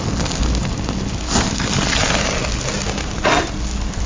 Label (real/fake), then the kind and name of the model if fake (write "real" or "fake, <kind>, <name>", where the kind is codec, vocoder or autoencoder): real